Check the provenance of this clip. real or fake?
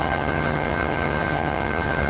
fake